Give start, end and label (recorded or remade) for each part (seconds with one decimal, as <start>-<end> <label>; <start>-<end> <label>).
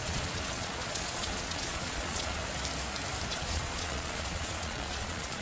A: 0.0-2.4 remade; 2.4-3.3 recorded; 3.3-5.4 remade